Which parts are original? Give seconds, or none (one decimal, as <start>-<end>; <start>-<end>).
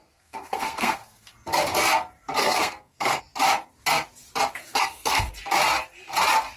1.3-2.4; 3.2-4.6; 5.3-6.6